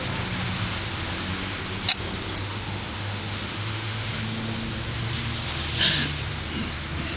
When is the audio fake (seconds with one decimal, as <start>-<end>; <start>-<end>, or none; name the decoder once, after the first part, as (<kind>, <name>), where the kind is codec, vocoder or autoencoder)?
2.4-4.1 (autoencoder, DAC-VAE)